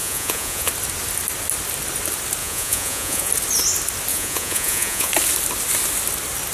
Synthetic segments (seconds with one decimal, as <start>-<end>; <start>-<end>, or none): 0.0-0.7; 2.4-3.3; 4.1-5.1